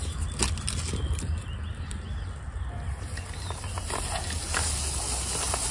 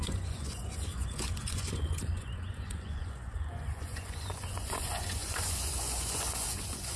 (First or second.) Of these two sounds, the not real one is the second